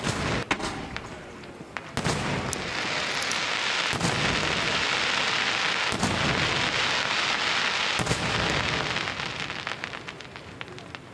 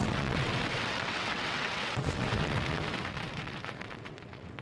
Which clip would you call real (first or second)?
first